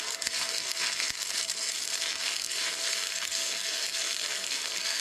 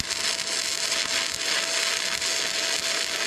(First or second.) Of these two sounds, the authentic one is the second